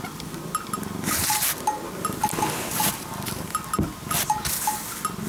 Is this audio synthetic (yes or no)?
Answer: no